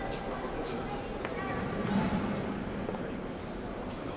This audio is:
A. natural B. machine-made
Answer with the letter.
B